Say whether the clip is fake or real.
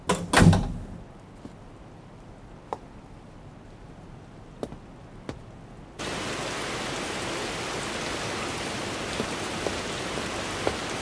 real